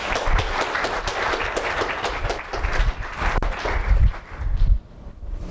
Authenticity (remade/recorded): recorded